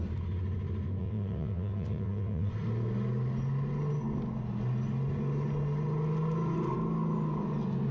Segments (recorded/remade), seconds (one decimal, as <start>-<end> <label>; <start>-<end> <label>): 0.0-1.0 recorded; 1.0-2.5 remade; 2.5-7.9 recorded